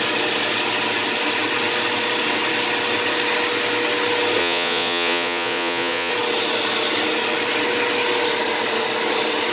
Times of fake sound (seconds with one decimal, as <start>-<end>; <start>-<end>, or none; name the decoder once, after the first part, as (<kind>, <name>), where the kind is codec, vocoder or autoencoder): 4.4-6.1 (vocoder, Vocos)